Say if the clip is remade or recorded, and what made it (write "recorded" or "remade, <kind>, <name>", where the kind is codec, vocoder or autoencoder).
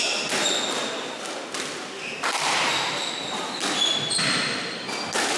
recorded